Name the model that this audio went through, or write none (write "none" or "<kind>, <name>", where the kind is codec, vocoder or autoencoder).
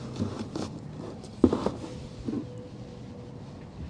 none